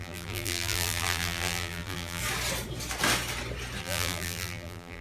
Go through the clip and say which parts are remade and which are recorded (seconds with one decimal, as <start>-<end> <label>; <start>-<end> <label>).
0.0-2.2 remade; 2.2-3.8 recorded; 3.8-5.0 remade